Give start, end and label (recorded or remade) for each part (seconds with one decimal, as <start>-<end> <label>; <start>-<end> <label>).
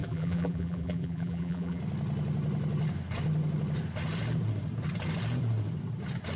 0.0-1.8 remade; 1.8-6.4 recorded